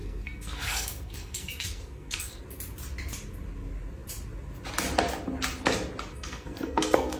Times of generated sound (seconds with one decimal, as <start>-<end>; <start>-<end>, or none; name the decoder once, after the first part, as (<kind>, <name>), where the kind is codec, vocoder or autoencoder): 0.0-2.4 (codec, SNAC); 6.1-7.2